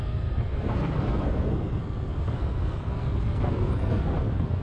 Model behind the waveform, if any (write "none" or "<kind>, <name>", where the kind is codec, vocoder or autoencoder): codec, SNAC